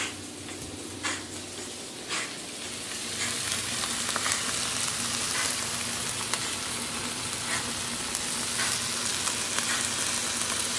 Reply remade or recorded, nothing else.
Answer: recorded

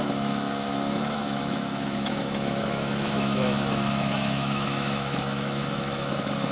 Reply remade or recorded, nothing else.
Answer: remade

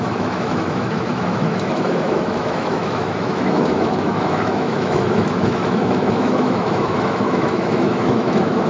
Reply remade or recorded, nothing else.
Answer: remade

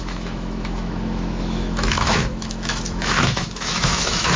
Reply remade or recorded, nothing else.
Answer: remade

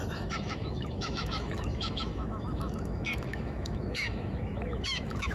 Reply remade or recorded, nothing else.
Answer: remade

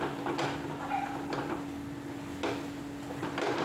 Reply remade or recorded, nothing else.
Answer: recorded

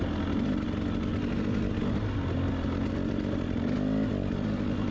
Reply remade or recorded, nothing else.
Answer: recorded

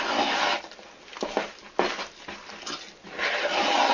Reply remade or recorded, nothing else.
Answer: recorded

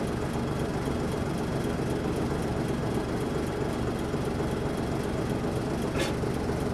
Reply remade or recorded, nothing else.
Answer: recorded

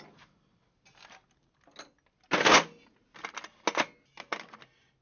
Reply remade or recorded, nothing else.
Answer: recorded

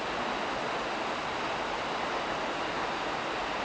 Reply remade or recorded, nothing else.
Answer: recorded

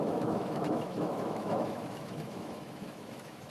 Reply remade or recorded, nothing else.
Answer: remade